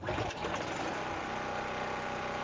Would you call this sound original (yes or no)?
yes